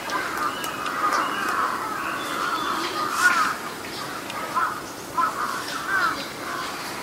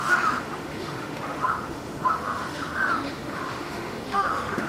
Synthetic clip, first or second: second